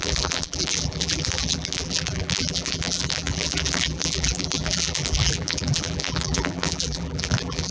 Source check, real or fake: fake